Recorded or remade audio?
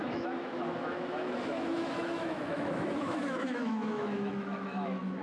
remade